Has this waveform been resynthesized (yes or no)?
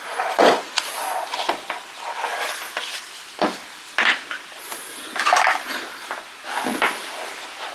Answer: no